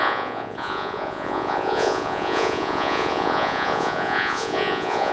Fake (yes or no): yes